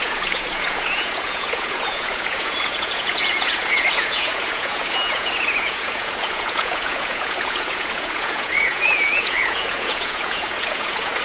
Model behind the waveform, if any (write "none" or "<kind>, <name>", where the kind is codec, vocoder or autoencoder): vocoder, Vocos